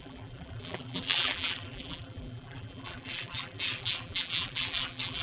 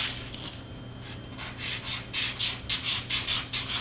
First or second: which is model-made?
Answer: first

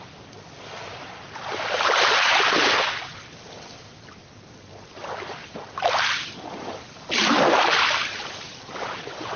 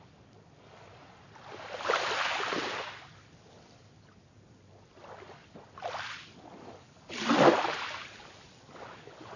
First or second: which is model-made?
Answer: first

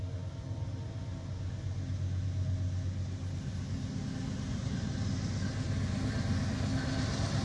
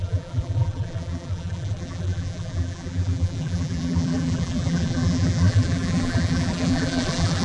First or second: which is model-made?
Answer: second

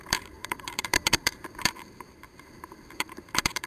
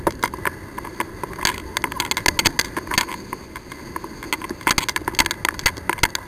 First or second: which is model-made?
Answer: first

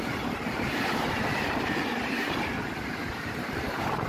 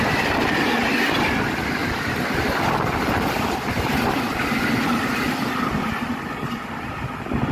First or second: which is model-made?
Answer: first